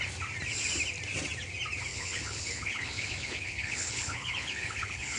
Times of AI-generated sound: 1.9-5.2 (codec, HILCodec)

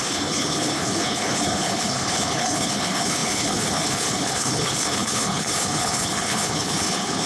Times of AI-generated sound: 0.0-7.3 (codec, HILCodec)

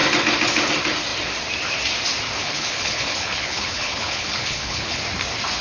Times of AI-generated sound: 2.4-5.0 (codec, HILCodec)